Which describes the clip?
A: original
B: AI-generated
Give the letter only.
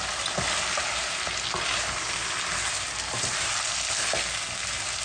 A